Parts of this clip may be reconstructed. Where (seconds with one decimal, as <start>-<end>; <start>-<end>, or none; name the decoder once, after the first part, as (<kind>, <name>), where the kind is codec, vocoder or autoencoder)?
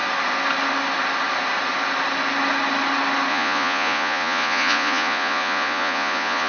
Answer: 3.3-6.5 (vocoder, Vocos)